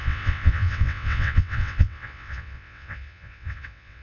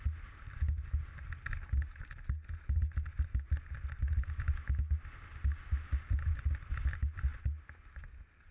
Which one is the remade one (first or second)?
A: first